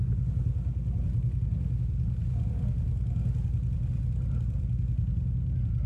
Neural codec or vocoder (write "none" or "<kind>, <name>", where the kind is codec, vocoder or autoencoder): none